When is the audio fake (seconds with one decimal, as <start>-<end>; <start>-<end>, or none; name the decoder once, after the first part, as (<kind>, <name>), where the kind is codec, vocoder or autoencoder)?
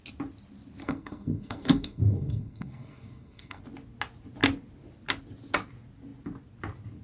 0.8-3.6 (codec, SNAC)